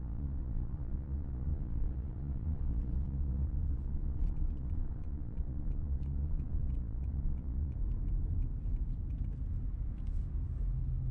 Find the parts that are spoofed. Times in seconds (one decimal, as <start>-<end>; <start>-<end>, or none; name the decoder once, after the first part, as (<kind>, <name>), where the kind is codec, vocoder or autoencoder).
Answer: 0.0-7.8 (vocoder, Vocos)